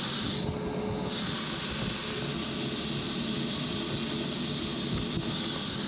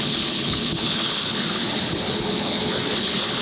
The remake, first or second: second